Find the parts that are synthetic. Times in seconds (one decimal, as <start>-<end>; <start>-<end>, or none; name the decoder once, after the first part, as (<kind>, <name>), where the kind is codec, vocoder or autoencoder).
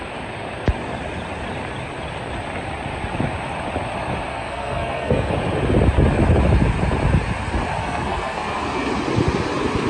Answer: 4.3-5.3 (codec, SNAC); 7.8-8.9